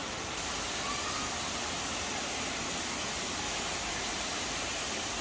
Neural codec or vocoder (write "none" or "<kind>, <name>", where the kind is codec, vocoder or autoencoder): none